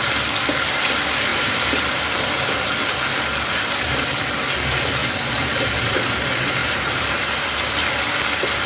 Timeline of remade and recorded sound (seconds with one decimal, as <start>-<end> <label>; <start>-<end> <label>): 0.0-1.3 recorded; 1.3-2.3 remade; 2.3-5.0 recorded; 5.0-5.7 remade; 5.7-6.6 recorded; 6.6-7.6 remade; 7.6-8.7 recorded